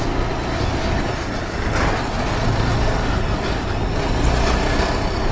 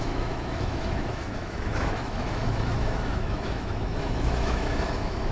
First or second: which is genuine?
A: first